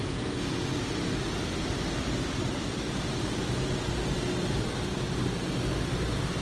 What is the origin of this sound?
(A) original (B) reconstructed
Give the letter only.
A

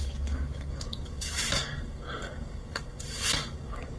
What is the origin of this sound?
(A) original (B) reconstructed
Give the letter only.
B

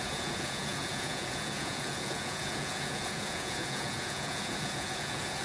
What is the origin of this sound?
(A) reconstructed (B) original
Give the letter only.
A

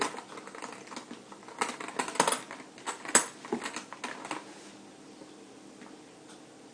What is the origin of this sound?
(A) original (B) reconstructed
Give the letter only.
A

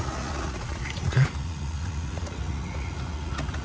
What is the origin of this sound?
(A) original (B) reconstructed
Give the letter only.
B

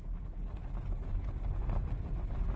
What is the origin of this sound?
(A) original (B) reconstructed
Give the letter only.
A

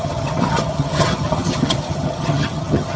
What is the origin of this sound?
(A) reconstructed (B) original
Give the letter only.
A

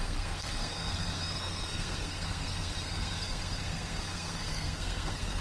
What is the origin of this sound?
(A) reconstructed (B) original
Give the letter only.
A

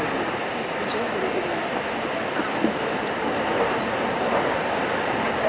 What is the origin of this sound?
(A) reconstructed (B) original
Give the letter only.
B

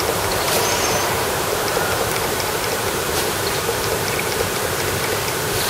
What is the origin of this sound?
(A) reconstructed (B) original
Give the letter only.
A